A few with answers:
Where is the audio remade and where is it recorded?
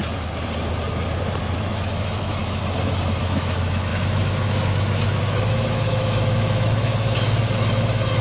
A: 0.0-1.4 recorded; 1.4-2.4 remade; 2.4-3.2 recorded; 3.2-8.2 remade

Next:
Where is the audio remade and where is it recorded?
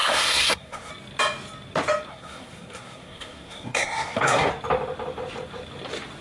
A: 0.0-0.9 remade; 0.9-2.1 recorded; 2.1-4.5 remade; 4.5-6.2 recorded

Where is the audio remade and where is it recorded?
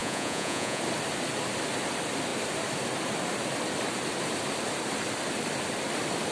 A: 0.0-0.8 remade; 0.8-6.3 recorded